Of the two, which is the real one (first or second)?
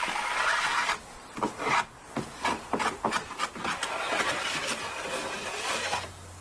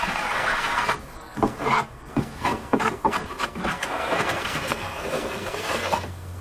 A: first